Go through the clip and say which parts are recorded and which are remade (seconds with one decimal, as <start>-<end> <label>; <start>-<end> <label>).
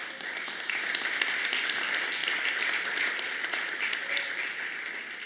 0.0-5.3 recorded